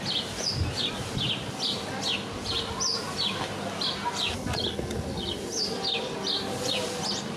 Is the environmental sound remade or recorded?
recorded